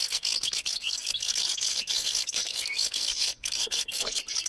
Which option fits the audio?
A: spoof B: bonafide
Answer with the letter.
A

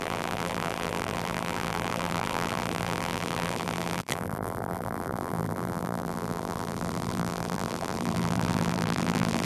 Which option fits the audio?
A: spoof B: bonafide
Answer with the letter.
A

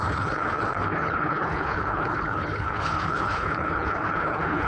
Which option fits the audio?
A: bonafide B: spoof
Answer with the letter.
B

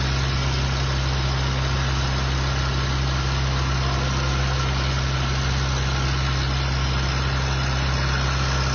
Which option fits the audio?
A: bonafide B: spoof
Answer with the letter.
A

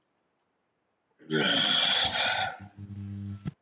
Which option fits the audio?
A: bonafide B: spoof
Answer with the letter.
A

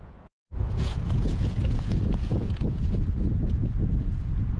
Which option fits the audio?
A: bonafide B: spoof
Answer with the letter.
B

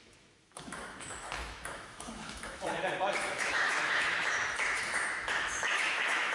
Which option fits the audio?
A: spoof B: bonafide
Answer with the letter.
A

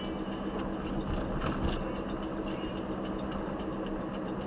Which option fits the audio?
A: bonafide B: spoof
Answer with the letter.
A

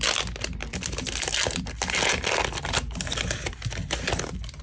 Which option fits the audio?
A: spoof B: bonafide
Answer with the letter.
B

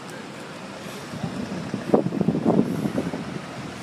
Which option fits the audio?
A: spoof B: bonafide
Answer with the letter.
B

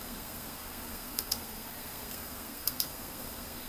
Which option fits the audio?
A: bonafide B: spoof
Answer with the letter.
B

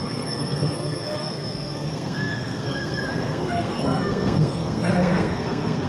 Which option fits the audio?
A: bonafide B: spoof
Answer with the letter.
B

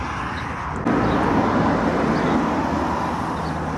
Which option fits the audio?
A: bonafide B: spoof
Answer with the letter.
A